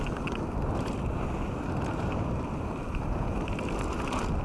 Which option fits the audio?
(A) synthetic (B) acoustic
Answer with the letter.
B